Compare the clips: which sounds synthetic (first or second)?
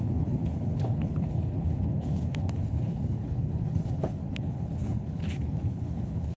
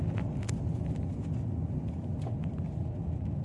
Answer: first